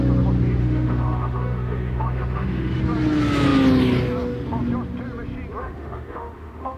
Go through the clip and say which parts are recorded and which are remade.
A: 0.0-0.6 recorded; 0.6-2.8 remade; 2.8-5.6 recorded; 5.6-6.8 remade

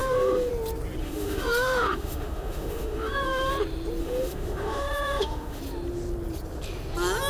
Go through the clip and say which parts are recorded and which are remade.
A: 0.0-0.5 remade; 0.5-1.0 recorded; 1.0-3.5 remade; 3.5-4.0 recorded; 4.0-5.6 remade; 5.6-7.3 recorded

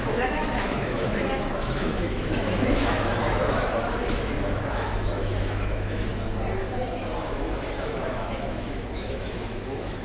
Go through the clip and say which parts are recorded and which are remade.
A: 0.0-6.1 remade; 6.1-7.2 recorded; 7.2-10.0 remade

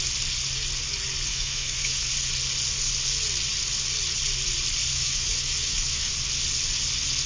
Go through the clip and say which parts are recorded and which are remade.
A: 0.0-1.3 recorded; 1.3-2.1 remade; 2.1-4.9 recorded; 4.9-6.1 remade; 6.1-7.3 recorded

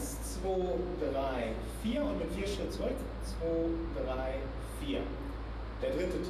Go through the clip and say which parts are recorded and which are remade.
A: 0.0-2.5 remade; 2.5-5.8 recorded; 5.8-6.3 remade

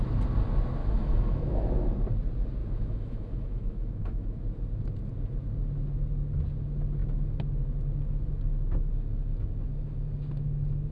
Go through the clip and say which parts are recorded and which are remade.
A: 0.0-0.8 recorded; 0.8-1.6 remade; 1.6-2.6 recorded; 2.6-4.4 remade; 4.4-10.9 recorded

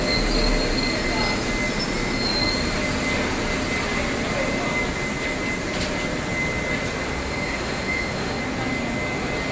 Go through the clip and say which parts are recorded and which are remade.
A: 0.0-7.2 recorded; 7.2-8.4 remade; 8.4-9.5 recorded